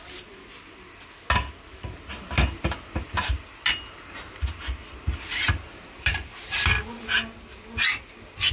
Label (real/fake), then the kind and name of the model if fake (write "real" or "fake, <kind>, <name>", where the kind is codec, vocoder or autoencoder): real